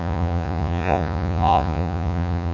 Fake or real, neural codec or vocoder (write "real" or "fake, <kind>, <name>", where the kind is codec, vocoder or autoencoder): fake, vocoder, Vocos